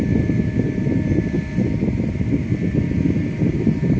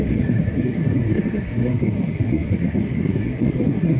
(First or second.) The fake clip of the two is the second